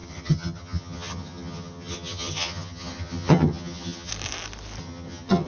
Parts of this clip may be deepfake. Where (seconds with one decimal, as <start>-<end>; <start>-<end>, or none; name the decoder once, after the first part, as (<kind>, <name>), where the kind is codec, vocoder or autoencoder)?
0.0-4.1 (vocoder, HiFi-GAN); 4.8-5.5